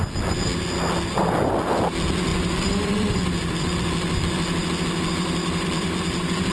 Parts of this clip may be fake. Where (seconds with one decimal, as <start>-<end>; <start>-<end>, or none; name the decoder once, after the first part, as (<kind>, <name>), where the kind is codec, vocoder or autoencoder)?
2.3-6.5 (vocoder, BigVGAN v2)